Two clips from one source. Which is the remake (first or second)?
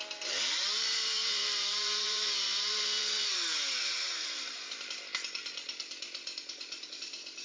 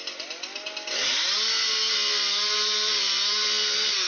first